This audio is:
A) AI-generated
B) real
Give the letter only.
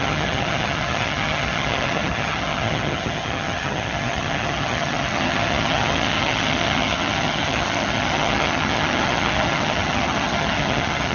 A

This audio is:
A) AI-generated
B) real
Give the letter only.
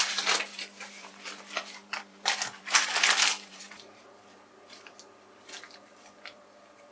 A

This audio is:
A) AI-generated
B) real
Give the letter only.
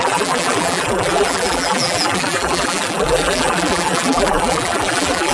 A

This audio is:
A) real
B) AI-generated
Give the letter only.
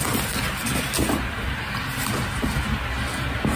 A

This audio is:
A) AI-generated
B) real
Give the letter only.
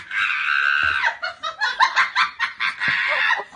B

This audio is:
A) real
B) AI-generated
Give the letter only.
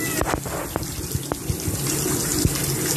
A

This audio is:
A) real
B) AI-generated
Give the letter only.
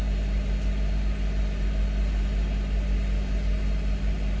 A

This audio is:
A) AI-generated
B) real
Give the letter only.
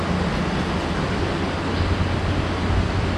B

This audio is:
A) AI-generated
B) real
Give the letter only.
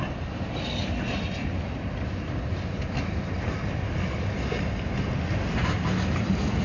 B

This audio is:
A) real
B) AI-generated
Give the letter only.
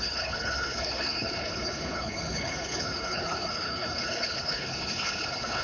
B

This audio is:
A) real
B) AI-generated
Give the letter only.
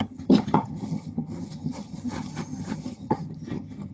B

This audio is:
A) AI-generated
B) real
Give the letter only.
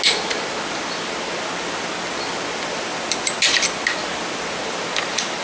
B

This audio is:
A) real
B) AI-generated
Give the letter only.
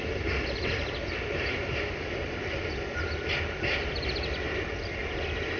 A